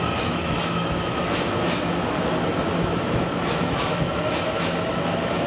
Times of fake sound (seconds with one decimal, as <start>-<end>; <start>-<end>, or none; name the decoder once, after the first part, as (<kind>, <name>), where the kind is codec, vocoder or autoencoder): 0.0-5.5 (autoencoder, DAC-VAE)